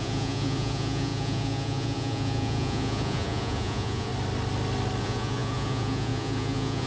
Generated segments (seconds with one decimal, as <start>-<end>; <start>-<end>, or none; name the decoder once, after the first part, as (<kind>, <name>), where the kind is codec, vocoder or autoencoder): 0.0-4.1 (vocoder, Vocos); 5.0-6.9